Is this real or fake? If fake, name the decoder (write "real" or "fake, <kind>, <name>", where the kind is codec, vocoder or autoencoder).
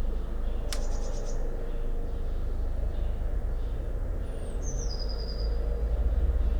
real